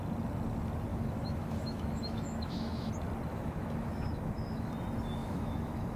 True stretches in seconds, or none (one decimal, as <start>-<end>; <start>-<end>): 0.0-0.9; 2.9-3.3; 4.7-5.2